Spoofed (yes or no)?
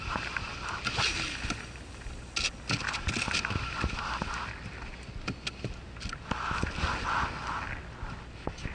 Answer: no